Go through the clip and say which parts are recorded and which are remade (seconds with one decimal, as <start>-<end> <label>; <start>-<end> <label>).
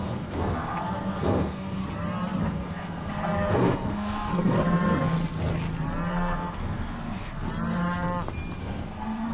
0.0-1.8 remade; 1.8-2.4 recorded; 2.4-5.2 remade; 5.2-6.1 recorded; 6.1-7.4 remade; 7.4-8.6 recorded; 8.6-9.3 remade